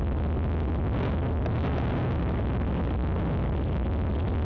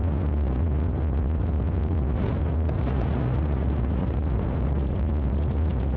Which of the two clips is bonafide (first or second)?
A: first